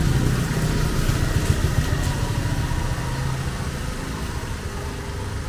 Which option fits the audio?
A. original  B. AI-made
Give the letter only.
A